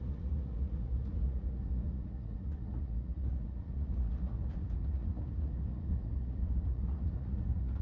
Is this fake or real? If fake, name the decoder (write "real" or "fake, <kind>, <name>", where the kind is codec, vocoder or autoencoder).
fake, vocoder, Vocos